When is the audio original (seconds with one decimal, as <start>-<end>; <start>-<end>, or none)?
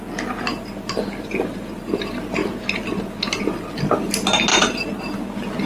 0.0-5.7